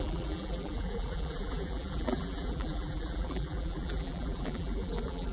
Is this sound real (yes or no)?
no